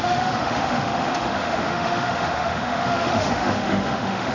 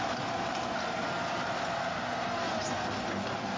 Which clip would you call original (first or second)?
second